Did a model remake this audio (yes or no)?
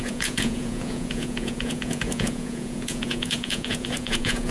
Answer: yes